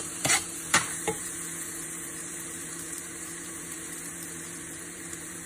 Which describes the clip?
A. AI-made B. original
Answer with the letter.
A